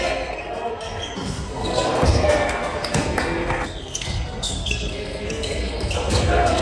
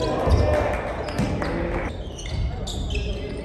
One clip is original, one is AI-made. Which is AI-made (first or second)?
first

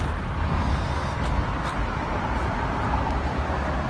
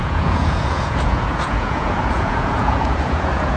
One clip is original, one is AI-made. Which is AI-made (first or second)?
second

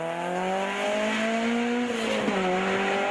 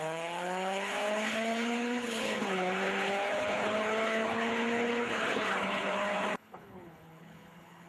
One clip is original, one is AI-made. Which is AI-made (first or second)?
second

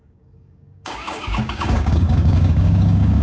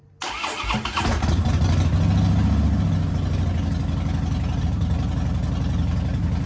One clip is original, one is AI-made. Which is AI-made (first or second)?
first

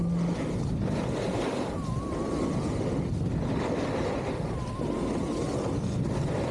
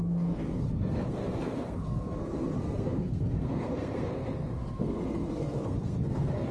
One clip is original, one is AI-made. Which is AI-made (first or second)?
second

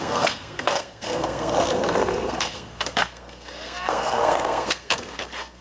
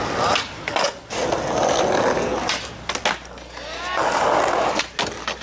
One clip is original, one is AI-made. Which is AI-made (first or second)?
first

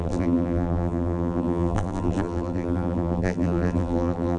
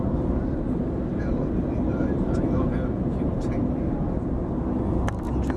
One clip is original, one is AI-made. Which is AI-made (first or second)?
first